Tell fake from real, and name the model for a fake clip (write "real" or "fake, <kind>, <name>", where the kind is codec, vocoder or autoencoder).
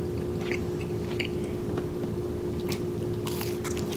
real